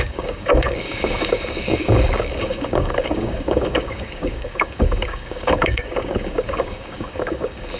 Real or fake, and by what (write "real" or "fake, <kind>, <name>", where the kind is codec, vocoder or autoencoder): fake, codec, DAC